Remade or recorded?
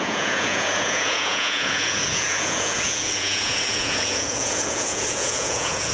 remade